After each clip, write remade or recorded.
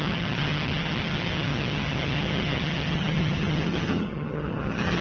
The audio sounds remade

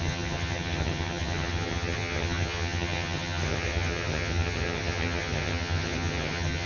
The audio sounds remade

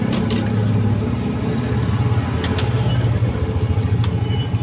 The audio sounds recorded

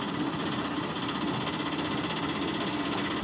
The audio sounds recorded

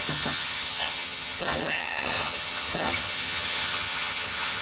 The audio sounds remade